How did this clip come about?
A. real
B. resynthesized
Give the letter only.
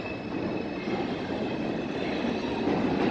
A